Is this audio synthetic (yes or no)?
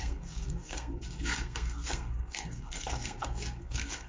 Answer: yes